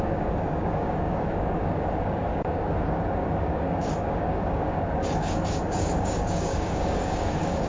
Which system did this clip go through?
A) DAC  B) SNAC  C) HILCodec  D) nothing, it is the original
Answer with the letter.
A